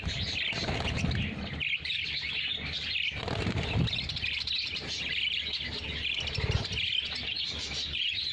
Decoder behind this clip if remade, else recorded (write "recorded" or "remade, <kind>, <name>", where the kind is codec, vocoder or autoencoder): recorded